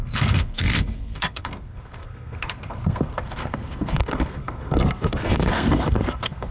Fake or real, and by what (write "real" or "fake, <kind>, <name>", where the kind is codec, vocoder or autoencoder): fake, codec, SNAC